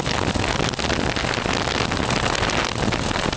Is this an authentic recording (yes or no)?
yes